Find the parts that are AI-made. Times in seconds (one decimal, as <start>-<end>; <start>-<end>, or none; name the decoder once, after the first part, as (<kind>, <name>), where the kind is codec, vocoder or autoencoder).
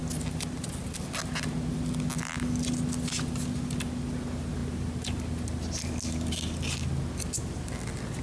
none